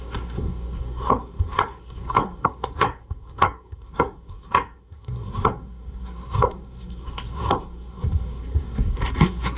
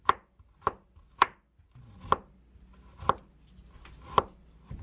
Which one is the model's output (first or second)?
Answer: first